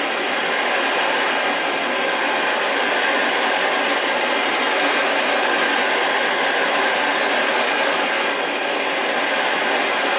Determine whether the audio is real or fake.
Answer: real